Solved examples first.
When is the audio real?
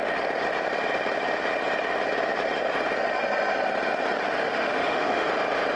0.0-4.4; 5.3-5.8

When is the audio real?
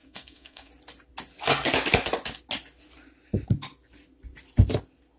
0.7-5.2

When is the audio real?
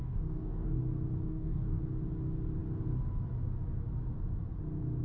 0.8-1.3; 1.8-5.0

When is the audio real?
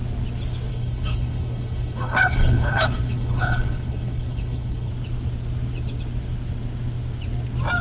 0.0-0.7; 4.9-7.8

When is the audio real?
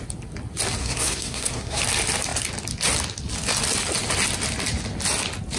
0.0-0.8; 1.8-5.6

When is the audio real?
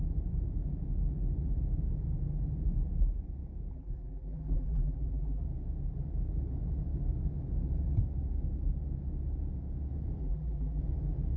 0.0-3.7; 5.4-10.2; 10.8-11.4